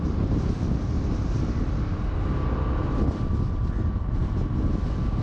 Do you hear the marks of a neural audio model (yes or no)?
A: no